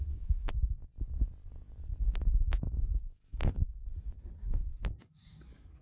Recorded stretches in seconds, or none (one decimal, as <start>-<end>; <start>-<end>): 0.9-2.8; 3.8-5.0